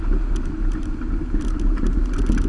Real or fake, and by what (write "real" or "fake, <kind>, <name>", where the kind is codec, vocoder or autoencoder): real